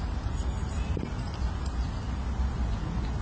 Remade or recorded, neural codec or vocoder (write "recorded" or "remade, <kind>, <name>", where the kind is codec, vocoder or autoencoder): recorded